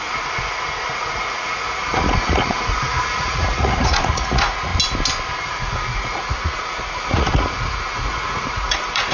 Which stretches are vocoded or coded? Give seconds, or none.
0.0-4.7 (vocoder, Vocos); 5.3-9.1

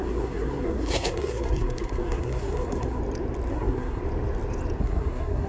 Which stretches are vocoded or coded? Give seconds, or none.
0.0-3.0 (codec, SNAC); 3.5-4.0; 4.8-5.5